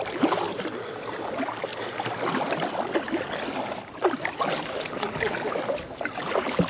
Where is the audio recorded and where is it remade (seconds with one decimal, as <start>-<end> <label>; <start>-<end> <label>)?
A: 0.0-6.7 recorded